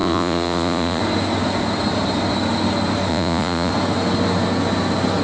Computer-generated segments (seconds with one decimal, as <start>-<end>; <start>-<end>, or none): 0.0-1.0; 3.1-3.7